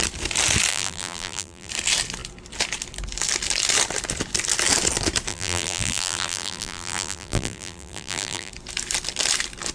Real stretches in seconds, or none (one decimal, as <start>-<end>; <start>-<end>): 0.0-0.7; 1.7-5.3; 8.5-9.7